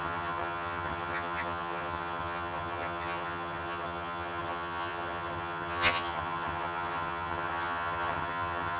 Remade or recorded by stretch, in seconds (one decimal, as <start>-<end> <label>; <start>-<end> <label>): 0.0-8.8 remade

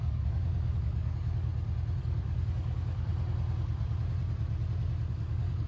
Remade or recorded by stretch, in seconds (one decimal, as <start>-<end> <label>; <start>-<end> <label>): 0.0-1.5 remade; 1.5-2.0 recorded; 2.0-3.1 remade; 3.1-5.1 recorded; 5.1-5.7 remade

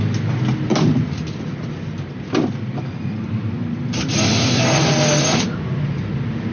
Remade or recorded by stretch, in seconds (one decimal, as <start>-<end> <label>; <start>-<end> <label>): 0.0-6.5 recorded